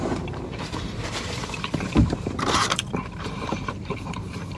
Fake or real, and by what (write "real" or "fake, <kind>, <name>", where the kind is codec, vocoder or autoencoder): fake, vocoder, BigVGAN v2